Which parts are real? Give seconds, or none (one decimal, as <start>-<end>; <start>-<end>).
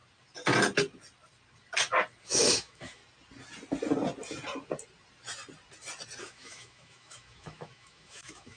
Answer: 0.0-2.2; 3.0-6.2